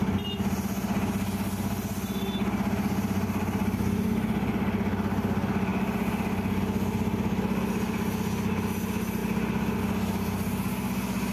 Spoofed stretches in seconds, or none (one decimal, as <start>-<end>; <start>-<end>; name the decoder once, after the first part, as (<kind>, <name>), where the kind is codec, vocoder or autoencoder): none